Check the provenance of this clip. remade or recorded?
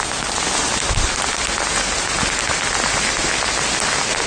recorded